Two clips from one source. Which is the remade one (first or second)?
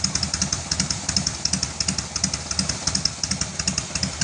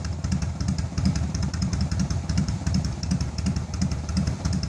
second